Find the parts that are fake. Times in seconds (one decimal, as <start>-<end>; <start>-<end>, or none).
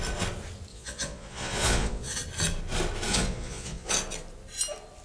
0.7-2.2; 3.1-3.9